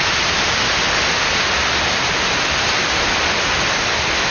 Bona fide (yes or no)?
yes